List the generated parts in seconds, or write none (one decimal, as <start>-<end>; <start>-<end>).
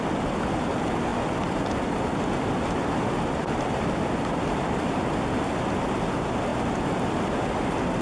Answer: none